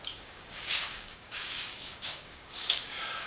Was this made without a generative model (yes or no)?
no